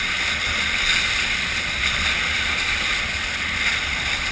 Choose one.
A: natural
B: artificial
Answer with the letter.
A